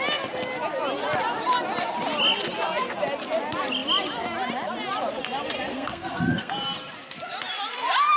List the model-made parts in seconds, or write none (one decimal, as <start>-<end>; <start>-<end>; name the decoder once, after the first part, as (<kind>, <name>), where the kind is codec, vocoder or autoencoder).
5.7-6.5 (codec, SNAC)